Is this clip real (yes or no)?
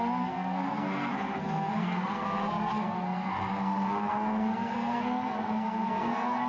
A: no